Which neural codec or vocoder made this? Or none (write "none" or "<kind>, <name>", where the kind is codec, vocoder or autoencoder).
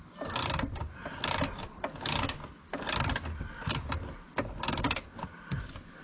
none